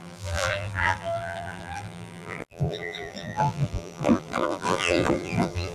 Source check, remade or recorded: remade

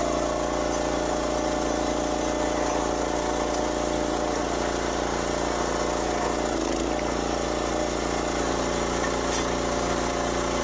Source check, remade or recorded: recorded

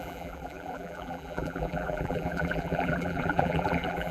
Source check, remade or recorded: remade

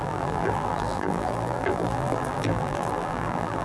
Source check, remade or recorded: remade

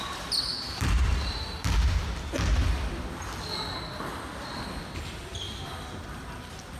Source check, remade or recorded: remade